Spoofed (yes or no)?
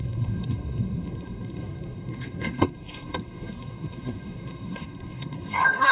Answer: yes